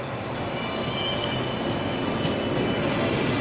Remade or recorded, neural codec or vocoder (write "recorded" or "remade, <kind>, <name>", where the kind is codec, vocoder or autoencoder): recorded